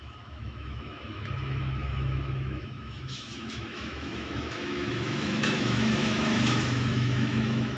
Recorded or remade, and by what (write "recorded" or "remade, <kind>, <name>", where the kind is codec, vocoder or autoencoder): remade, autoencoder, DAC-VAE